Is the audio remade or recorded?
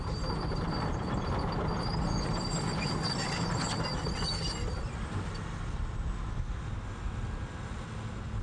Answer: recorded